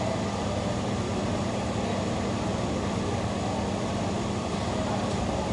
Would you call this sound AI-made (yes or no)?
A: no